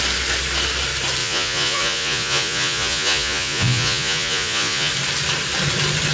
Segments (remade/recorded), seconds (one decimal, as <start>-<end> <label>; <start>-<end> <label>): 0.0-1.2 recorded; 1.2-4.9 remade; 4.9-6.1 recorded